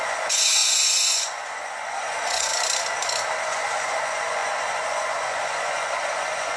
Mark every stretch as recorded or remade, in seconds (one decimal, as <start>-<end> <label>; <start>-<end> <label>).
0.0-2.5 remade; 2.5-3.4 recorded; 3.4-6.6 remade

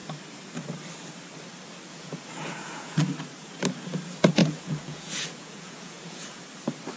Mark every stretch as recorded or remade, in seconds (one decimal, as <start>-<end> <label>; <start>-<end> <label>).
0.0-1.9 recorded; 1.9-3.0 remade; 3.0-4.4 recorded; 4.4-6.4 remade; 6.4-7.0 recorded

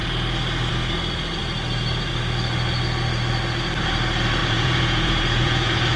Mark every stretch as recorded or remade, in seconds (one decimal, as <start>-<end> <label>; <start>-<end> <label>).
0.0-4.4 recorded; 4.4-6.0 remade

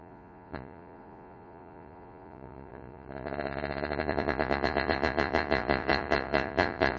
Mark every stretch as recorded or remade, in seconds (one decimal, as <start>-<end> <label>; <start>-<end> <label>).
0.0-7.0 remade